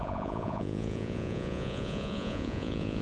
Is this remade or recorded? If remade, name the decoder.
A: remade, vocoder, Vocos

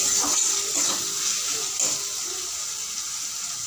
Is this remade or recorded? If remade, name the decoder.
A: recorded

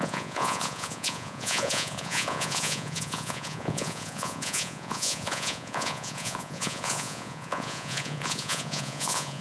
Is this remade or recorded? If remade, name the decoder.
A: remade, vocoder, Vocos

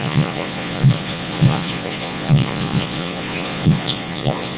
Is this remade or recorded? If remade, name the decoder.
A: remade, vocoder, Vocos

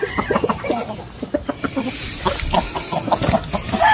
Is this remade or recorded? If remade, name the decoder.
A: recorded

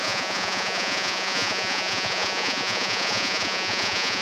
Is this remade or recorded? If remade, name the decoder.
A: remade, vocoder, Vocos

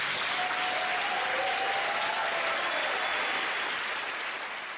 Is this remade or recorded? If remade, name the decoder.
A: recorded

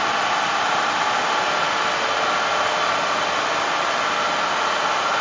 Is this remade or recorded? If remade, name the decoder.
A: recorded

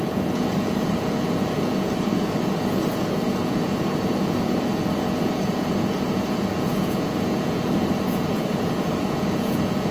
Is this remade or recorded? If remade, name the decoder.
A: remade, vocoder, Vocos